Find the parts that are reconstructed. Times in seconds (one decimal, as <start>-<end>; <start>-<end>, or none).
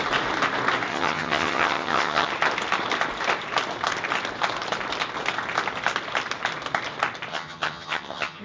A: 0.9-2.3; 7.3-8.4